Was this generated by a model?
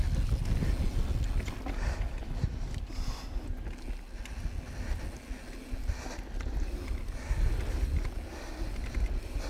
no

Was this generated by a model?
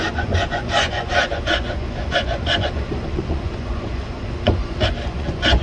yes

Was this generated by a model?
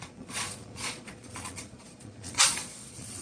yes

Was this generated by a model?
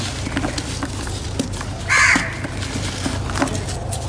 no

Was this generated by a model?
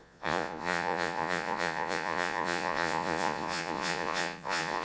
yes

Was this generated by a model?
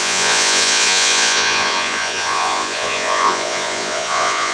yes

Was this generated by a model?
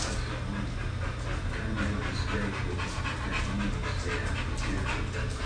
no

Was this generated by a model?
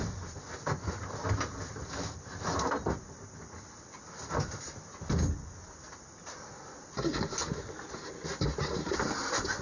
no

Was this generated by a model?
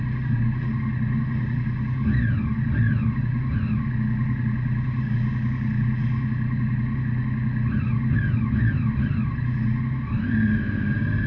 no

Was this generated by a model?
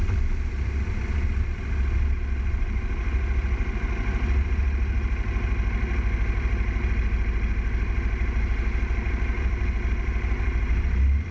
no